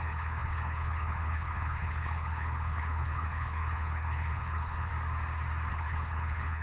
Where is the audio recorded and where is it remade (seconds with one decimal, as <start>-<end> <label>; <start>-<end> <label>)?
0.0-4.9 remade; 4.9-5.7 recorded; 5.7-6.6 remade